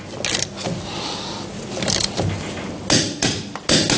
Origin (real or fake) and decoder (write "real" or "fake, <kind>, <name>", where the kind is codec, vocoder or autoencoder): real